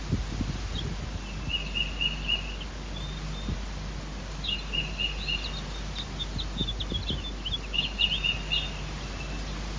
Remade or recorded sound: recorded